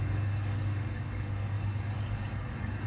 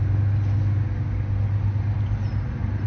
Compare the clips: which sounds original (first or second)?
second